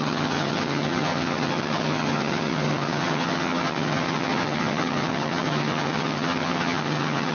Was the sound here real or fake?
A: fake